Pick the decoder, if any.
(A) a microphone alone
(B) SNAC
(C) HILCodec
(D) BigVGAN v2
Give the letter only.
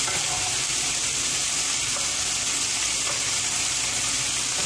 A